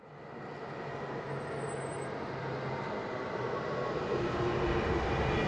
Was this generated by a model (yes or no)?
no